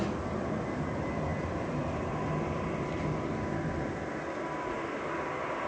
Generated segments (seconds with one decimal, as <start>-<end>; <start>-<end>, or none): none